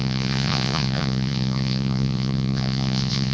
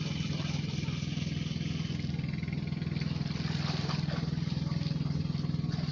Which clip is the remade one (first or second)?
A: first